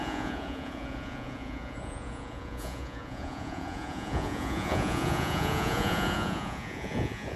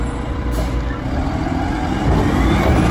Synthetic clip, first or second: first